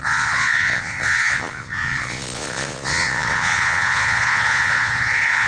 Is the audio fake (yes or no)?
yes